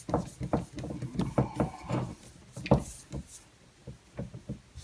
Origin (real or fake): real